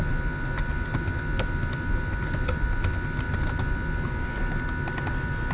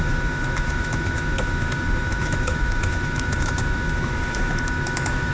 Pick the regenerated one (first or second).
second